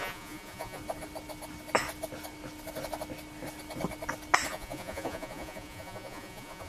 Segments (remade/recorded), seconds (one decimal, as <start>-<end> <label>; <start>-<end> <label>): 0.0-0.8 remade; 0.8-4.5 recorded; 4.5-6.7 remade